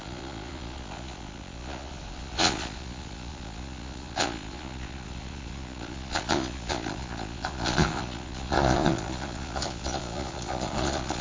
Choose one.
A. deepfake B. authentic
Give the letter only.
A